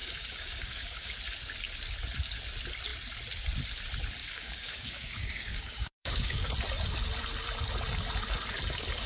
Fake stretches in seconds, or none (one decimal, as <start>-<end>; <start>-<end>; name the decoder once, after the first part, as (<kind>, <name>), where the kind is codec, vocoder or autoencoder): 0.0-1.2 (codec, DAC); 4.2-6.5